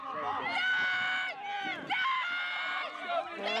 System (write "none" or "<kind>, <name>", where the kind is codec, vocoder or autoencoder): none